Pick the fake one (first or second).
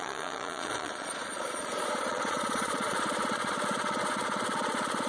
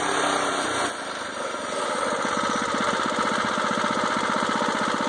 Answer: first